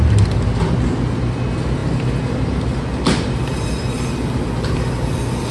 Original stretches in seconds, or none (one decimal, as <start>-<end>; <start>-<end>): 0.0-5.5